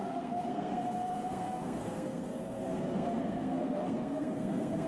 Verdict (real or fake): fake